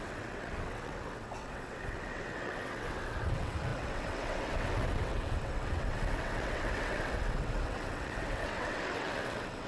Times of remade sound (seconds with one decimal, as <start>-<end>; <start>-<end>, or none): 0.0-9.7